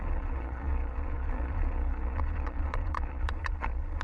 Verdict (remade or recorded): remade